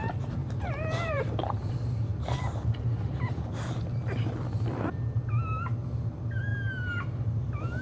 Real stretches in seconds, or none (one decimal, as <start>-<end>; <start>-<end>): 0.0-0.4; 1.7-7.8